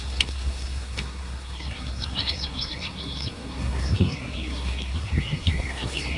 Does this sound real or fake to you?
fake